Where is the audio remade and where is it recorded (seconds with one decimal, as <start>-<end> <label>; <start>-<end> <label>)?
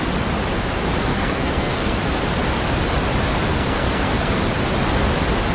0.0-1.1 recorded; 1.1-2.0 remade; 2.0-3.5 recorded; 3.5-4.4 remade; 4.4-5.5 recorded